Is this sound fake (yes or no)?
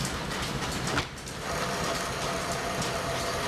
no